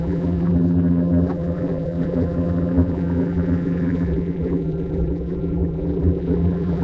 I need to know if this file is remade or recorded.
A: remade